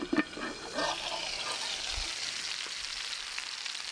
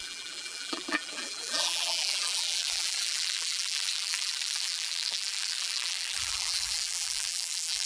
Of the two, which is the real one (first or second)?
first